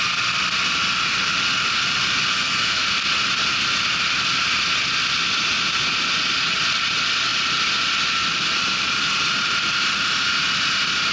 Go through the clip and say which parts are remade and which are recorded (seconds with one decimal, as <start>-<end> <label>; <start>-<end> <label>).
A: 0.0-2.3 recorded; 2.3-2.8 remade; 2.8-11.1 recorded